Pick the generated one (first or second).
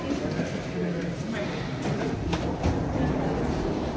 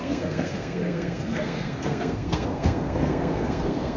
second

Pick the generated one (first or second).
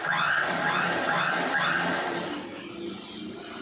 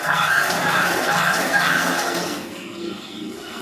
second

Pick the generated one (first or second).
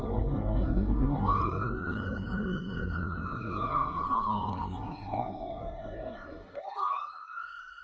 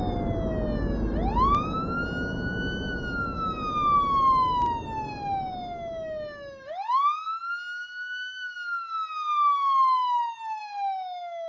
first